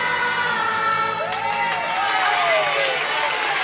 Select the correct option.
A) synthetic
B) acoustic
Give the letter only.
B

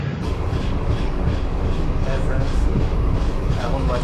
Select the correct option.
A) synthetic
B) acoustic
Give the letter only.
A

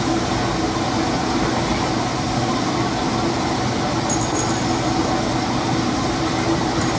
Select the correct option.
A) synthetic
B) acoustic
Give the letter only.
B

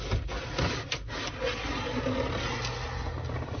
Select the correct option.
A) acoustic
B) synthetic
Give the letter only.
A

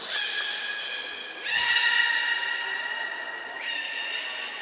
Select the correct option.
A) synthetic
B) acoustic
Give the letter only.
B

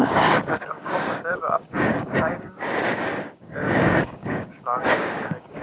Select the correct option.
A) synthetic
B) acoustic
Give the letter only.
A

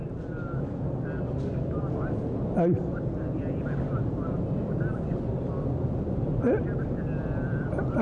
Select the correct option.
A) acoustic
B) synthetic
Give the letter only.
A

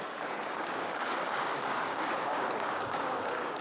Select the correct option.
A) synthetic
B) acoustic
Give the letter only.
A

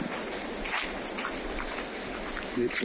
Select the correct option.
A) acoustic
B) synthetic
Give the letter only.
A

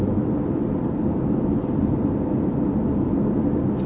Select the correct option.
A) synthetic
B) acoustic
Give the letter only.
B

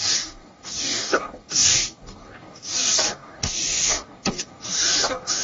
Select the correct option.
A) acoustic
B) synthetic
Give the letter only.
B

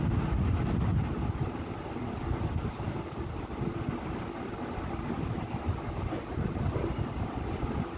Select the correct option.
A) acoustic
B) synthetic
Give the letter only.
A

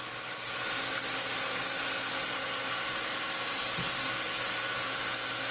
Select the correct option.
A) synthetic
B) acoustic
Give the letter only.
B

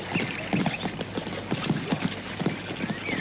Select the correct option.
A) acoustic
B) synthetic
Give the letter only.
A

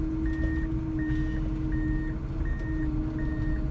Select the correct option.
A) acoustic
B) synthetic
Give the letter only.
A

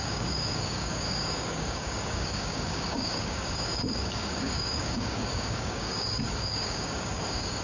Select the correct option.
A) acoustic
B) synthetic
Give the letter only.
B